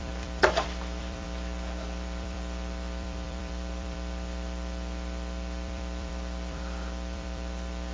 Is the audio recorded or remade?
remade